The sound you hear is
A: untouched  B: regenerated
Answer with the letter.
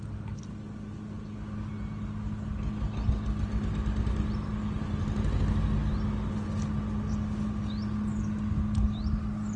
A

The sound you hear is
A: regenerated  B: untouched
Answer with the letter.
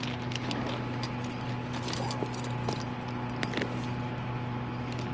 B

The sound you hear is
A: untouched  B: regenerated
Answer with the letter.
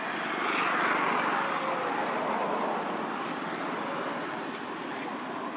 A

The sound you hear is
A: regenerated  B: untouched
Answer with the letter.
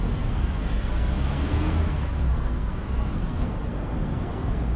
A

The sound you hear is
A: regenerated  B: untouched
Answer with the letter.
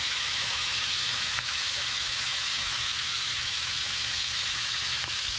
A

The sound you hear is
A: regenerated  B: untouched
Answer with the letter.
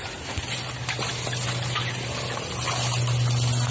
B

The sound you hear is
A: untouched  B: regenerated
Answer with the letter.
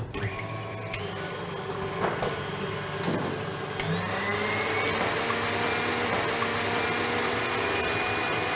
A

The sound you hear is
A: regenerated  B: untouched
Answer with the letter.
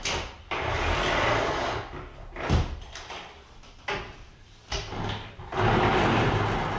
B